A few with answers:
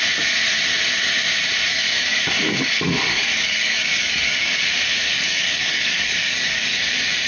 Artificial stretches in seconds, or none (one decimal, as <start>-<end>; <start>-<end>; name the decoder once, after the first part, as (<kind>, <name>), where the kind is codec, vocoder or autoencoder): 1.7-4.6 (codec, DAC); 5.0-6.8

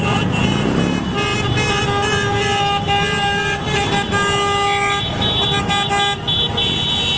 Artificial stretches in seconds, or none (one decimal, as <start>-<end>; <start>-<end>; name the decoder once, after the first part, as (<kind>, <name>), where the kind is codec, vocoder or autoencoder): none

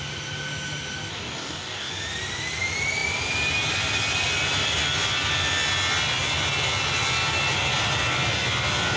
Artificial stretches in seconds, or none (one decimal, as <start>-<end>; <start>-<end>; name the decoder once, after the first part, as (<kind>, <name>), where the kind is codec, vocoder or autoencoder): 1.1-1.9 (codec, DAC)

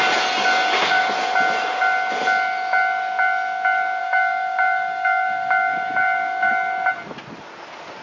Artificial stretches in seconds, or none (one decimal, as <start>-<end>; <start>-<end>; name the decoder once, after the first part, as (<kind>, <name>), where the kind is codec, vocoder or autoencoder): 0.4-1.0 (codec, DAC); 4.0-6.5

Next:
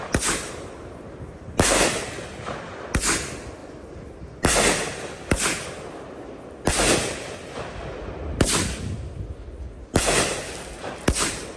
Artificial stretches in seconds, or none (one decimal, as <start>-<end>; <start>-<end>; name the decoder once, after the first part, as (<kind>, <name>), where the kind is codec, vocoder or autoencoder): none

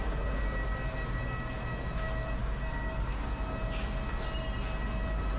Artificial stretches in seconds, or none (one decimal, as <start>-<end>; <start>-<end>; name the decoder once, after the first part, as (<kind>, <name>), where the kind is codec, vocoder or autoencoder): 2.4-3.3 (codec, DAC)

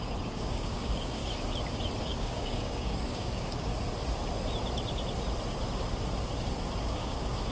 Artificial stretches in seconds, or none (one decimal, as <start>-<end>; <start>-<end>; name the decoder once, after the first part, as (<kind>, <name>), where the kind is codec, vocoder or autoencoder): 0.0-1.2 (codec, DAC); 2.0-3.7; 6.8-7.5

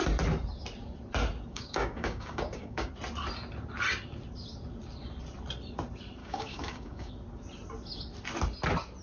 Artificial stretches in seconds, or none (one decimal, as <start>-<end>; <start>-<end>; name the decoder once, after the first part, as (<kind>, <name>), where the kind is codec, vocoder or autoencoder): 1.5-2.9 (codec, DAC); 6.2-7.1